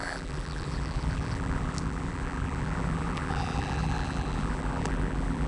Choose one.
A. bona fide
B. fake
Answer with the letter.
B